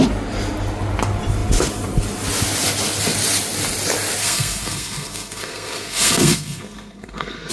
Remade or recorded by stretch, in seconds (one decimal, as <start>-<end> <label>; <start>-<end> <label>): 0.0-4.2 recorded; 4.2-7.5 remade